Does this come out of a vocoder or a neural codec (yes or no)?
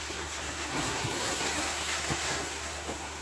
yes